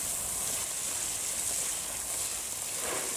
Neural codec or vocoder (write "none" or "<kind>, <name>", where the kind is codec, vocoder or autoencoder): none